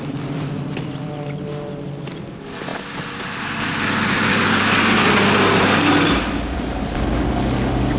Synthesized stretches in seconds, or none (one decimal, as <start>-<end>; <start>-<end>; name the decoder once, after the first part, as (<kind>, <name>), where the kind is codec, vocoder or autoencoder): none